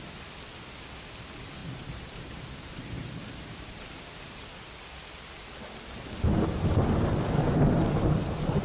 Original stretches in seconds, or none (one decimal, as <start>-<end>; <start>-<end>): 0.0-1.6; 3.8-8.6